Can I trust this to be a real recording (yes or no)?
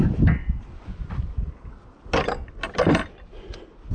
yes